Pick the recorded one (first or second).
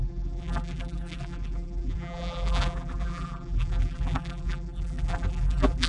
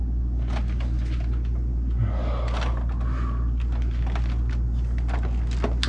second